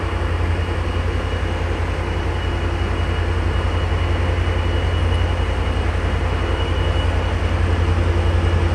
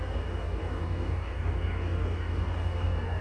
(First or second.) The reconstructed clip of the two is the second